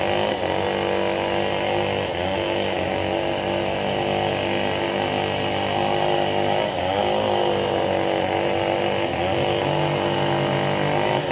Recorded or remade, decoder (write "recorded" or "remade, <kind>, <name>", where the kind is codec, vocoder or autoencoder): recorded